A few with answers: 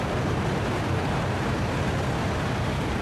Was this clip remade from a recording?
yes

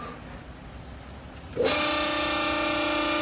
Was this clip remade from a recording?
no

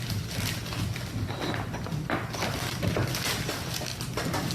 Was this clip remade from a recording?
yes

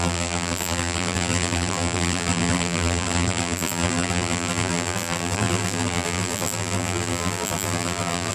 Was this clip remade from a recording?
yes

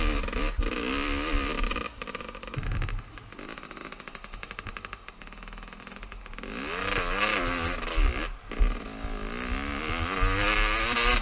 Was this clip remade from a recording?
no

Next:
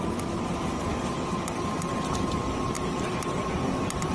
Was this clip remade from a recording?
no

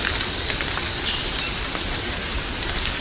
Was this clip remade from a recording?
yes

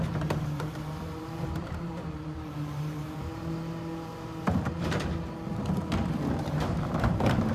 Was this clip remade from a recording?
yes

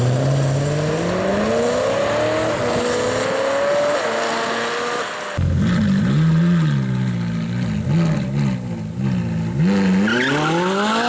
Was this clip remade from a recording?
no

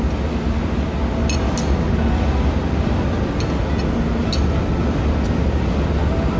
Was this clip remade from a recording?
no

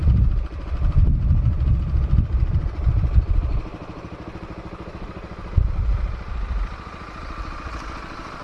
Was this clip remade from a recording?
yes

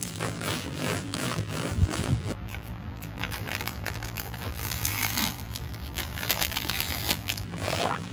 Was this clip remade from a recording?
yes